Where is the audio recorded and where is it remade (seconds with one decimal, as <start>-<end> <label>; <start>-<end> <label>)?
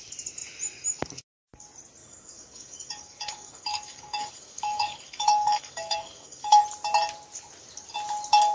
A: 0.0-2.0 recorded; 2.0-6.6 remade; 6.6-8.5 recorded